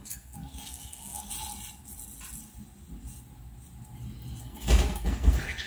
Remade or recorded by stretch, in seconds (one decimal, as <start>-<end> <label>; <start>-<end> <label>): 0.0-1.3 remade; 1.3-4.4 recorded; 4.4-5.7 remade